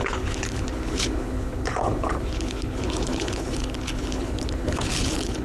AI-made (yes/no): yes